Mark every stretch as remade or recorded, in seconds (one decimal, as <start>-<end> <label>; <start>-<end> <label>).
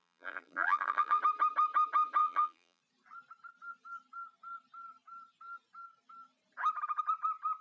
0.0-1.2 remade; 1.2-2.2 recorded; 2.2-2.8 remade; 2.8-7.6 recorded